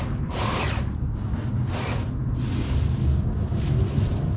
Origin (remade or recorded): recorded